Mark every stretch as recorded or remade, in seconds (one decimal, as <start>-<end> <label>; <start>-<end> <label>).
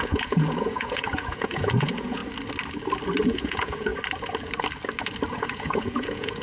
0.0-2.2 remade; 2.2-3.3 recorded; 3.3-3.9 remade; 3.9-5.3 recorded; 5.3-6.4 remade